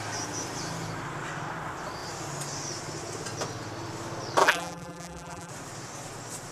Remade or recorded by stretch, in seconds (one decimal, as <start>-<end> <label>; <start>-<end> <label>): 0.0-4.4 recorded; 4.4-5.5 remade; 5.5-6.5 recorded